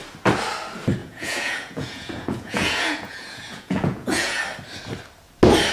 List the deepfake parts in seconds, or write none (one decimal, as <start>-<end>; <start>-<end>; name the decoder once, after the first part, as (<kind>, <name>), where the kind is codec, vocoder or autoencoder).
1.0-4.4 (vocoder, Vocos)